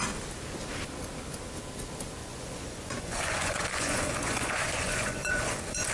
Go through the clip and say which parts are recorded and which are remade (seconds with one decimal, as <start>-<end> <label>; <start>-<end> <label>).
0.0-2.2 recorded; 2.2-5.9 remade